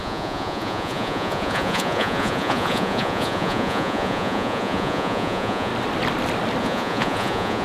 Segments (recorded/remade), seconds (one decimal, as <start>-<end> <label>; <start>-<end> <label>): 0.0-5.7 remade; 5.7-6.6 recorded; 6.6-7.6 remade